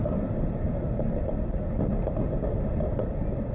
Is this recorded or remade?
recorded